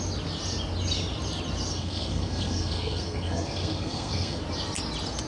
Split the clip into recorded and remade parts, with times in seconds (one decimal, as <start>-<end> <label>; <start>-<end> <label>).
0.0-1.7 recorded; 1.7-4.4 remade; 4.4-5.3 recorded